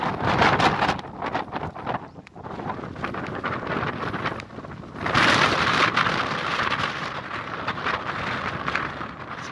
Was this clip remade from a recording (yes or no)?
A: no